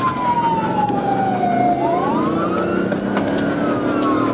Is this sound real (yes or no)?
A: yes